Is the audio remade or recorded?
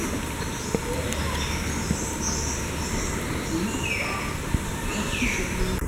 recorded